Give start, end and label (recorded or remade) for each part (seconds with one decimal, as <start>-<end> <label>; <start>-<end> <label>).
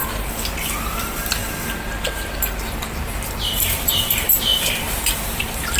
0.0-0.6 recorded; 0.6-1.4 remade; 1.4-2.6 recorded; 2.6-5.8 remade